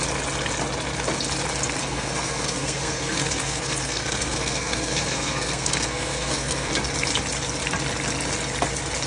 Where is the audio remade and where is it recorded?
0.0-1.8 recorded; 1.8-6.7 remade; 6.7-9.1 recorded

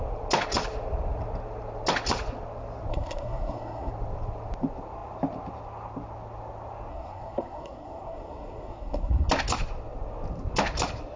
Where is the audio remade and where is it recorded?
0.0-2.9 recorded; 2.9-3.9 remade; 3.9-6.9 recorded; 6.9-9.3 remade; 9.3-11.2 recorded